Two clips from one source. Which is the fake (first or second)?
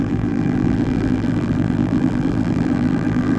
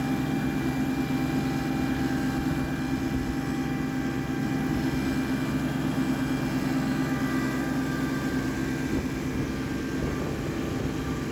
first